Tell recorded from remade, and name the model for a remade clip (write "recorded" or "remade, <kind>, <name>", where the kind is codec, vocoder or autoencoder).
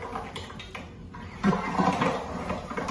recorded